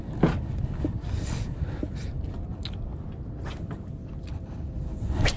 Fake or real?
real